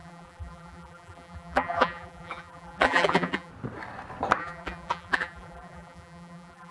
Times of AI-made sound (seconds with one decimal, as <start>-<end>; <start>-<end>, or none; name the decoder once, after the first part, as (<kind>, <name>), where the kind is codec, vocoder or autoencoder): 0.0-3.5 (vocoder, BigVGAN v2); 4.4-6.7